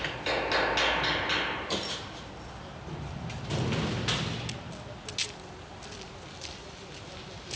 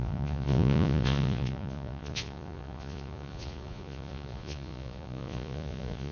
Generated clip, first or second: second